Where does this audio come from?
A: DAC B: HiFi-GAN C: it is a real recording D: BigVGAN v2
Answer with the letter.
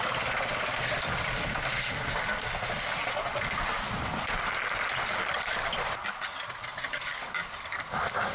C